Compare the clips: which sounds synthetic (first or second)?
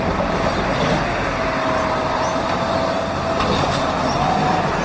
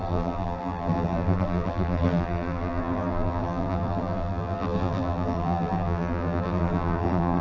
second